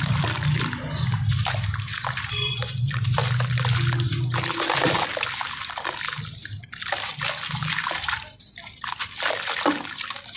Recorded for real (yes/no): yes